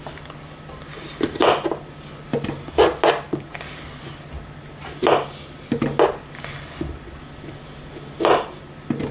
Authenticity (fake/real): real